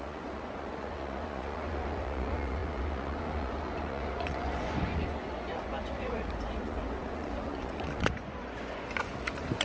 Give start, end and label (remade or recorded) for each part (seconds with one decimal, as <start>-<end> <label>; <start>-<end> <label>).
0.0-9.6 remade